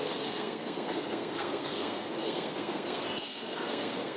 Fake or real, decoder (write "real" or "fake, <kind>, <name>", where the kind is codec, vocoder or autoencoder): fake, codec, SNAC